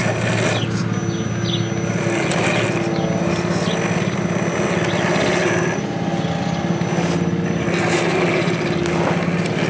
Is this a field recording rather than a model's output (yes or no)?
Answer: yes